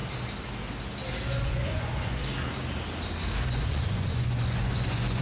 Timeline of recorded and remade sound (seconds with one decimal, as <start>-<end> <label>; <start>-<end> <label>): 0.0-1.4 recorded; 1.4-2.2 remade; 2.2-3.5 recorded; 3.5-5.2 remade